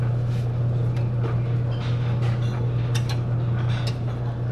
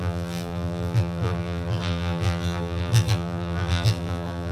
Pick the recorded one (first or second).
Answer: first